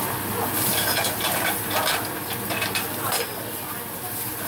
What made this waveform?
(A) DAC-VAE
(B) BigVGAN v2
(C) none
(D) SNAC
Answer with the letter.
C